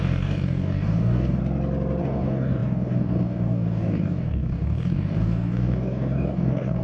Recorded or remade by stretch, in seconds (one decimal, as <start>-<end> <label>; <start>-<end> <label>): 0.0-1.4 remade; 1.4-2.0 recorded; 2.0-6.8 remade